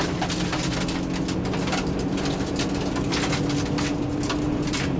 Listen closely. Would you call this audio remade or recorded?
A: recorded